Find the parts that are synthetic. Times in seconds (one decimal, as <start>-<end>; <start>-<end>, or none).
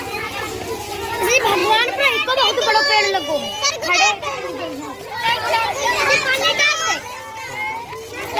none